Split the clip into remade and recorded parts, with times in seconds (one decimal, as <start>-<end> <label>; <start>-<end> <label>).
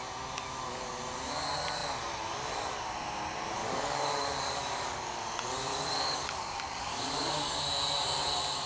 0.0-3.6 recorded; 3.6-5.2 remade; 5.2-5.7 recorded; 5.7-7.6 remade; 7.6-8.7 recorded